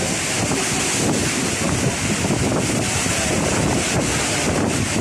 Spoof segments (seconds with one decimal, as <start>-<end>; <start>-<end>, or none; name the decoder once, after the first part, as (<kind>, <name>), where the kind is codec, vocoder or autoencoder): none